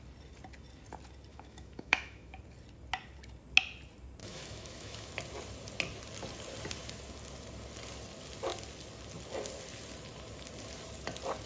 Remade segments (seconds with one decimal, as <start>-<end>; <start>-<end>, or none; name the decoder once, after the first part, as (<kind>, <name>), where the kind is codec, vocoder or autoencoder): 1.3-2.4 (autoencoder, DAC-VAE); 4.2-5.1